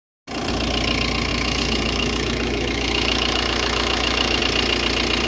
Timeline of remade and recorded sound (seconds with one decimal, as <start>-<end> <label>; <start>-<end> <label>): 0.0-1.3 recorded; 1.3-4.4 remade; 4.4-5.3 recorded